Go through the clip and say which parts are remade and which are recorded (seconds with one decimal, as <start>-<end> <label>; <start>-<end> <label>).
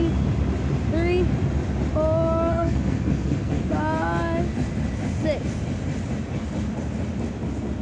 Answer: 0.0-2.5 recorded; 2.5-3.6 remade; 3.6-7.8 recorded